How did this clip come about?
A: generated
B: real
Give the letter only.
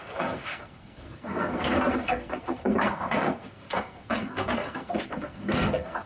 A